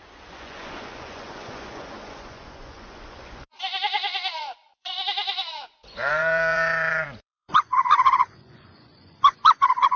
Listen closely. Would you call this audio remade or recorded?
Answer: remade